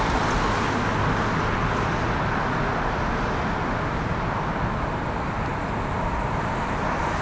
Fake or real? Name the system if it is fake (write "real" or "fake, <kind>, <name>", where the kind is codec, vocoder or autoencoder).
real